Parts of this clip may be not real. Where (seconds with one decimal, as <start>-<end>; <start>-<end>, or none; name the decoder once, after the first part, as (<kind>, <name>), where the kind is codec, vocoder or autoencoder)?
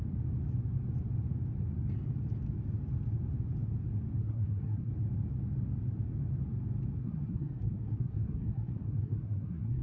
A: 4.2-4.9 (codec, SNAC); 7.0-9.8